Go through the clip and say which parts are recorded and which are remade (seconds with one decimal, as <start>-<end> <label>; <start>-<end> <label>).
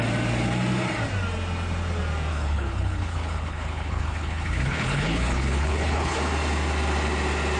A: 0.0-2.3 recorded; 2.3-6.2 remade; 6.2-7.6 recorded